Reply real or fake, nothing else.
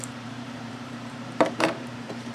fake